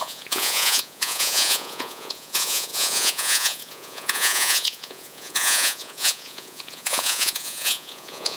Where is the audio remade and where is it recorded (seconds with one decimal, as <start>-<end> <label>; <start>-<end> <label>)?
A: 0.0-8.4 remade